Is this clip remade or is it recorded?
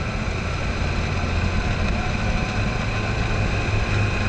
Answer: recorded